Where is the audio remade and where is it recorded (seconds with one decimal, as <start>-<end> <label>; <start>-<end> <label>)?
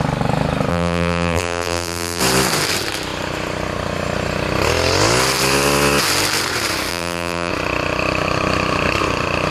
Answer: 0.0-0.7 recorded; 0.7-2.2 remade; 2.2-6.9 recorded; 6.9-7.5 remade; 7.5-9.5 recorded